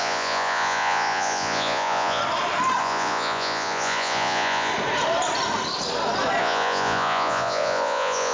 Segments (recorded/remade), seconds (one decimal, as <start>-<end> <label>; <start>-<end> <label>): 0.0-2.2 remade; 2.2-2.8 recorded; 2.8-4.7 remade; 4.7-6.4 recorded; 6.4-8.3 remade